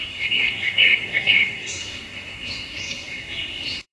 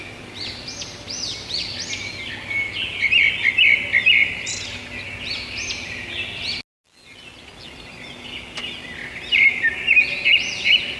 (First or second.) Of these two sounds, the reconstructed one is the first